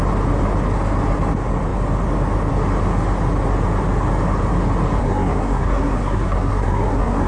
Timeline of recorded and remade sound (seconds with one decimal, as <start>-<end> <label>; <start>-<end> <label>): 0.0-5.0 recorded; 5.0-7.3 remade